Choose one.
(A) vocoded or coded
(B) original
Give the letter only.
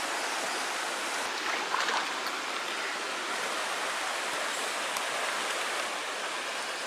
B